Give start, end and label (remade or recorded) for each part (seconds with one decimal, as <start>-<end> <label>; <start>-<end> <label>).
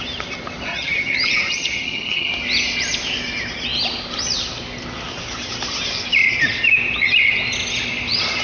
0.0-0.7 recorded; 0.7-2.3 remade; 2.3-8.4 recorded